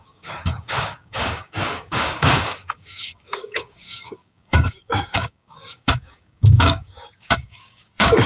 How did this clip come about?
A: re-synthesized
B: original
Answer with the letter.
A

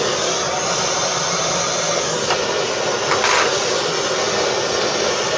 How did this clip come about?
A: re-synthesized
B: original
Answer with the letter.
B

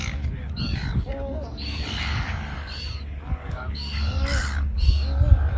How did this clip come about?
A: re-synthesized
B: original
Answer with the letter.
A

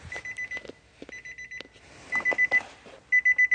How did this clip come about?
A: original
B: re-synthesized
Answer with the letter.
A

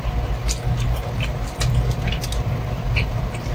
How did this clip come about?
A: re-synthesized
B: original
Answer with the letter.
B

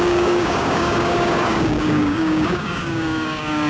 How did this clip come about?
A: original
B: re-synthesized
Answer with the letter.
B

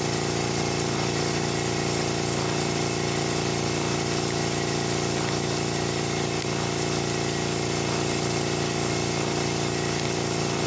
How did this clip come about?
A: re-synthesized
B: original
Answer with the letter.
B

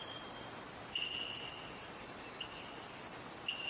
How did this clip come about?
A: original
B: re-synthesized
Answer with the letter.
A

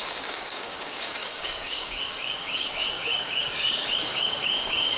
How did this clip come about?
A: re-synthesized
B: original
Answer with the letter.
A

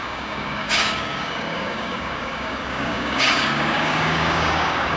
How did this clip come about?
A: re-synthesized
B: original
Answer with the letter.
A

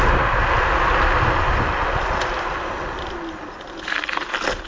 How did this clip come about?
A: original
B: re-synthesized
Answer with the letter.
A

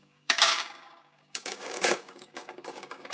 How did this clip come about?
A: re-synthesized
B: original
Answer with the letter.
A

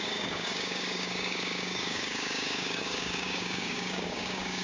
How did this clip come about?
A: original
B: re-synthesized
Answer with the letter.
B